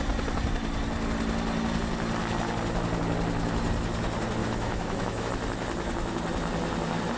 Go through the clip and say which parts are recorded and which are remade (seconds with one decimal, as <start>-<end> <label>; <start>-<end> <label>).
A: 0.0-4.4 recorded; 4.4-5.3 remade; 5.3-7.2 recorded